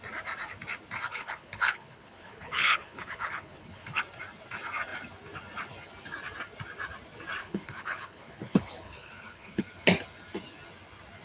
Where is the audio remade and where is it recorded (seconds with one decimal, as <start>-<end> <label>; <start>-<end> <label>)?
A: 0.0-1.1 recorded; 1.1-4.0 remade; 4.0-7.4 recorded; 7.4-9.6 remade; 9.6-11.2 recorded